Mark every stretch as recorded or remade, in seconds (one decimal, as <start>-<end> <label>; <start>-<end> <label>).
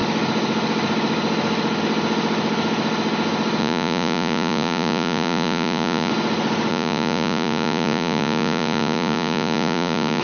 0.0-3.6 recorded; 3.6-6.1 remade; 6.1-6.7 recorded; 6.7-10.2 remade